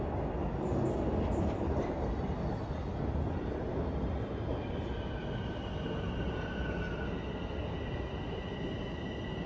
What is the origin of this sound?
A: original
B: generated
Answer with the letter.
A